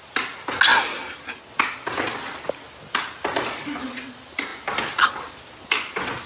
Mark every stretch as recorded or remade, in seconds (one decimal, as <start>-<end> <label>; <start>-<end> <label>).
0.0-6.3 recorded